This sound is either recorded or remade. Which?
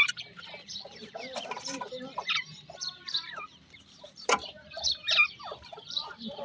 remade